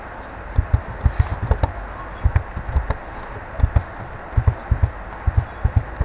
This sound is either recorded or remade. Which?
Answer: recorded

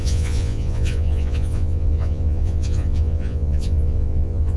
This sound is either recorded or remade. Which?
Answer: remade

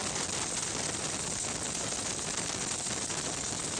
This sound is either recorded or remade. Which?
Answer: recorded